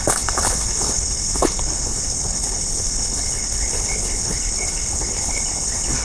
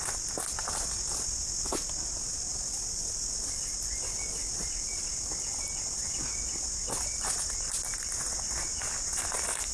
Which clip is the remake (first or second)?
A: first